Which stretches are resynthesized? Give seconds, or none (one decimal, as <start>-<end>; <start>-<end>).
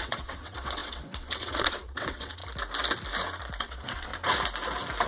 0.0-2.4; 3.6-4.1